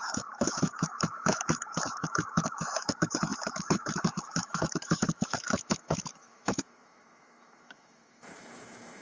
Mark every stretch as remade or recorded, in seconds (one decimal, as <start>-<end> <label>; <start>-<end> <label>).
0.0-9.0 remade